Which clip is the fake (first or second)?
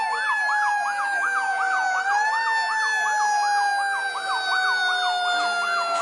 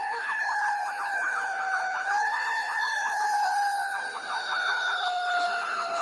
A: second